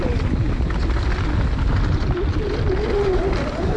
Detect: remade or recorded recorded